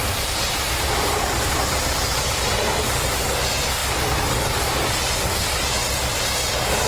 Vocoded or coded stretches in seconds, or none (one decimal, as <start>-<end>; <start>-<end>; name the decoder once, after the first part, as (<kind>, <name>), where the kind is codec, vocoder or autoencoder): 0.0-2.8 (vocoder, BigVGAN v2)